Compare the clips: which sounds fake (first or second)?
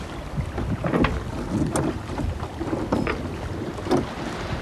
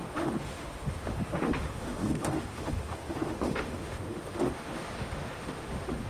second